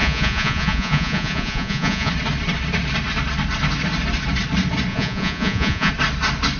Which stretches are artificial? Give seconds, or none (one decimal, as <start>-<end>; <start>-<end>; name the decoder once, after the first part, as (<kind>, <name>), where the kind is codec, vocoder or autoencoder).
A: 0.0-2.1 (vocoder, Vocos); 4.9-5.9